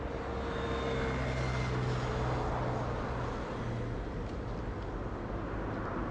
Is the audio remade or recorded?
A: recorded